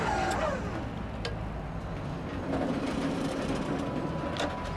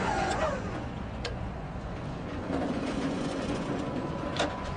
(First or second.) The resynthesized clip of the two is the second